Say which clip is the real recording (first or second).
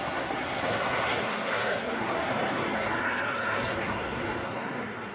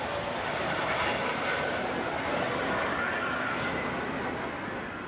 second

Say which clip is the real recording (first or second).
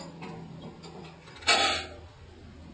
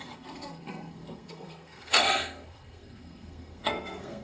first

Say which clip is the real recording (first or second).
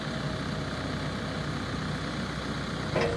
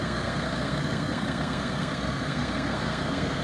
first